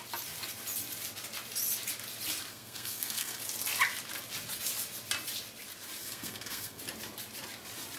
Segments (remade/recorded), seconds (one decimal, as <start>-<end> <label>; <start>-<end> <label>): 0.0-2.5 recorded; 2.5-3.4 remade; 3.4-6.0 recorded; 6.0-6.8 remade; 6.8-8.0 recorded